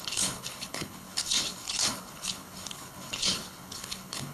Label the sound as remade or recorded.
remade